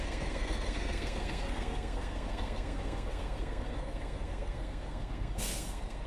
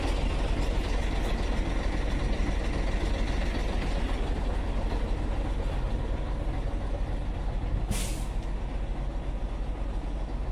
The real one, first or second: second